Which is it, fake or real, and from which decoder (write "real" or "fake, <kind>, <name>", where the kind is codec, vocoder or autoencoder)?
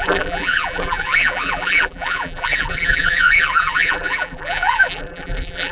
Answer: fake, vocoder, BigVGAN v2